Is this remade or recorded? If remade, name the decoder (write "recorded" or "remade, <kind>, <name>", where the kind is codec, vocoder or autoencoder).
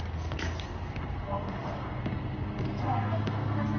remade, codec, SNAC